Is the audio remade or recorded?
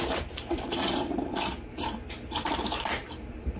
remade